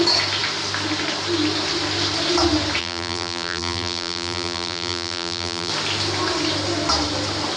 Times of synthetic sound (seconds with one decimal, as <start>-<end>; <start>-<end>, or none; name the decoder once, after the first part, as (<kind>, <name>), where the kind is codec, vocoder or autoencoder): 2.8-5.7 (vocoder, BigVGAN v2)